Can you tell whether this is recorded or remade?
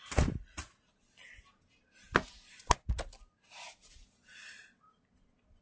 recorded